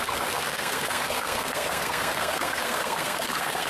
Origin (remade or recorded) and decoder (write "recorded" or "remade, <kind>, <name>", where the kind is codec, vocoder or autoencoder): remade, codec, SNAC